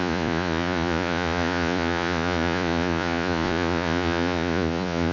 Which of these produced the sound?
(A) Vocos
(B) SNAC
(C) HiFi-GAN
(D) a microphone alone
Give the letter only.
A